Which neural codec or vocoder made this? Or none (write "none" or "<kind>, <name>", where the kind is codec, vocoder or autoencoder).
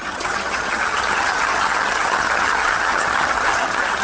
vocoder, HiFi-GAN